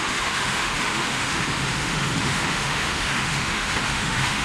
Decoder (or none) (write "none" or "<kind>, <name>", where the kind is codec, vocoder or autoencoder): autoencoder, DAC-VAE